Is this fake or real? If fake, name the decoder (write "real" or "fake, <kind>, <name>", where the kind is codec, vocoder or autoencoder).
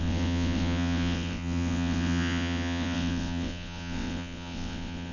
fake, vocoder, WaveNeXt